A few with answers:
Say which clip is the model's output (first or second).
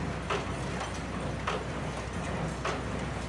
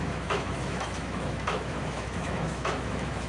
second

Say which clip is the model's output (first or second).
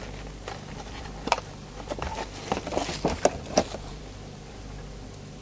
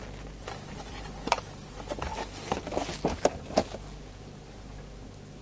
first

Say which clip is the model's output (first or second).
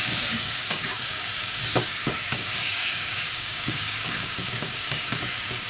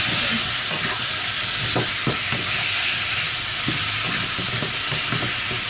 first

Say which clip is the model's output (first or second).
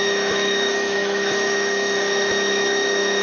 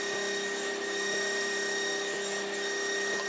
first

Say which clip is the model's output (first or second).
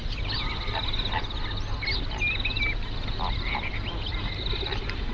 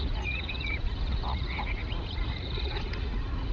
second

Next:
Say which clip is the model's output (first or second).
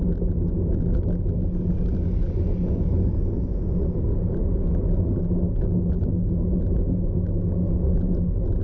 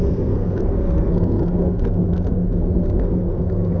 second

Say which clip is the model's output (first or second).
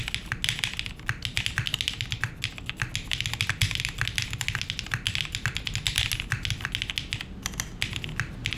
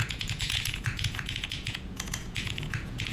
second